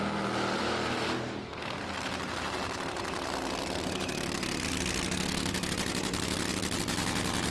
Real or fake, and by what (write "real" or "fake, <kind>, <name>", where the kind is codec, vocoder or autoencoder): real